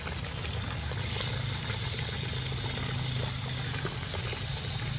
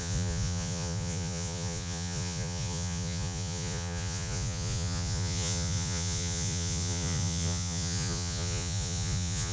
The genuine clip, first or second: first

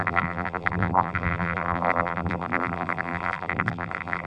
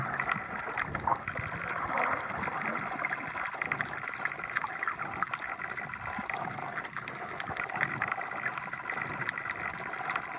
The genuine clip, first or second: second